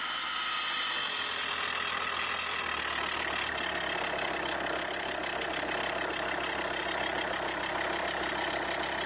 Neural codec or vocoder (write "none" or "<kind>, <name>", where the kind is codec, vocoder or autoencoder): none